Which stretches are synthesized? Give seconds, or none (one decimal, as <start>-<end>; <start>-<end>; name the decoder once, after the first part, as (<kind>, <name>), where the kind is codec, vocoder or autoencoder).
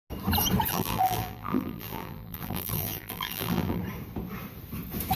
0.7-3.8 (vocoder, BigVGAN v2)